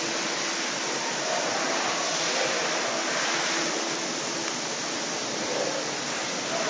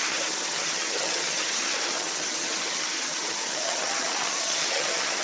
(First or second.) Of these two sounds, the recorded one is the first